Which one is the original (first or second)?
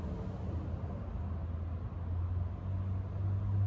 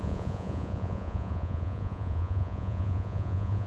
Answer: first